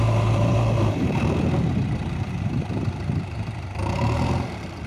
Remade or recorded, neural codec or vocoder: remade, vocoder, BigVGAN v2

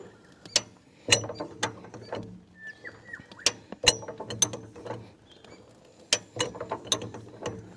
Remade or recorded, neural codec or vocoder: recorded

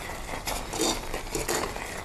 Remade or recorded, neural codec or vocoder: recorded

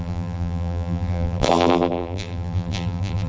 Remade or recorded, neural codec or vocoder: remade, vocoder, BigVGAN v2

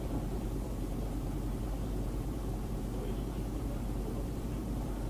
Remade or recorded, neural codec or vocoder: remade, vocoder, BigVGAN v2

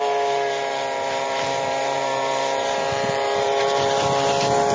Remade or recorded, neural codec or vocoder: remade, vocoder, BigVGAN v2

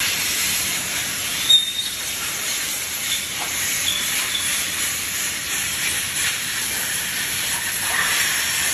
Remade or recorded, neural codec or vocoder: remade, vocoder, BigVGAN v2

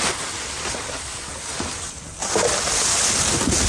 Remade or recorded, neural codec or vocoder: recorded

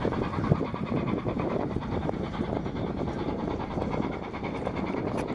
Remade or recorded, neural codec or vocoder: remade, vocoder, BigVGAN v2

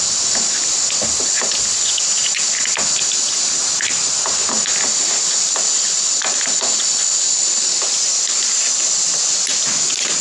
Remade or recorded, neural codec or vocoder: recorded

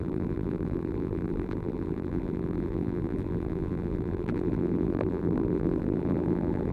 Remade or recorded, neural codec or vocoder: remade, vocoder, BigVGAN v2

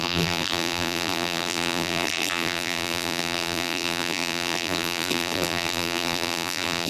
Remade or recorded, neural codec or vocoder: remade, vocoder, BigVGAN v2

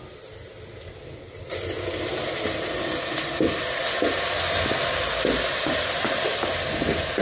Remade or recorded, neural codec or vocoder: recorded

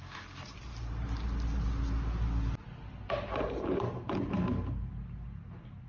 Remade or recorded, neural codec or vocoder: recorded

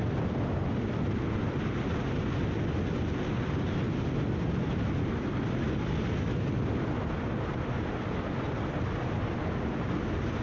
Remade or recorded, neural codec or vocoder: recorded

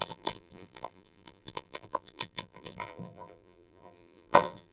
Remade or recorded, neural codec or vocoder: remade, vocoder, BigVGAN v2